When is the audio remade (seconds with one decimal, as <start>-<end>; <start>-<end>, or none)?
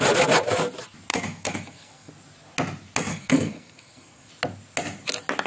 1.1-2.1; 3.1-4.3